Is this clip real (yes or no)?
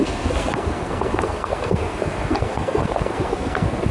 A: no